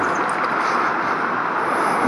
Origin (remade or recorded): recorded